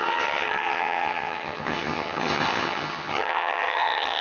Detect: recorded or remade remade